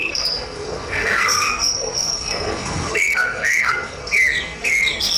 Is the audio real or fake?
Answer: fake